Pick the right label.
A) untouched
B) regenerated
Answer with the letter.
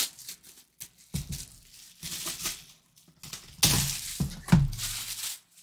A